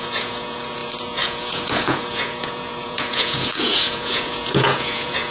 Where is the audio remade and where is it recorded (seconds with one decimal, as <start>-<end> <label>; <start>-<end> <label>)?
0.0-5.3 remade